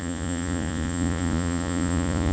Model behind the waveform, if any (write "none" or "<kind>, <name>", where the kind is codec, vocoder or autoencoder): vocoder, Vocos